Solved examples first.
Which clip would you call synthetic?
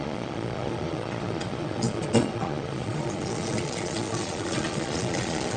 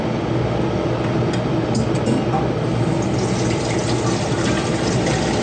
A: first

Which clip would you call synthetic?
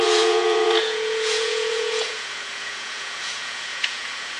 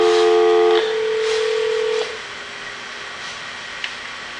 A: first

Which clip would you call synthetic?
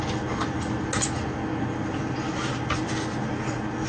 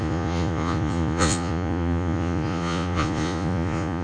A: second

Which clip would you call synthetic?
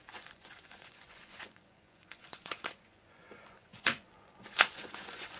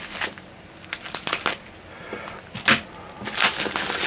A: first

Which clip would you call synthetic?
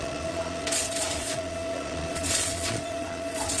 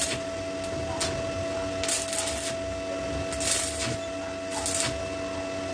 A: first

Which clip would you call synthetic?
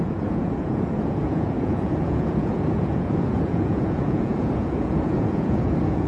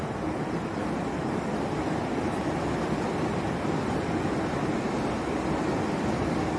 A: first